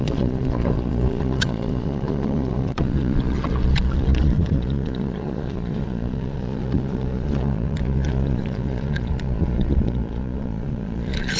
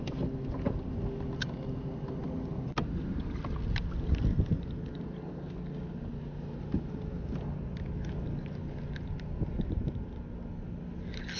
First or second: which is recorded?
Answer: second